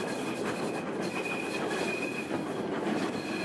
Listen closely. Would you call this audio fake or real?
real